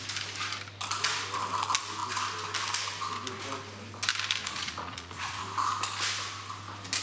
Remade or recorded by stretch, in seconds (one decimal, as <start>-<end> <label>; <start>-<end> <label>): 0.0-4.4 recorded; 4.4-5.4 remade; 5.4-7.0 recorded